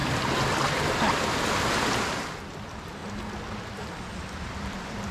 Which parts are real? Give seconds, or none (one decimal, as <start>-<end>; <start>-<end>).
3.0-4.2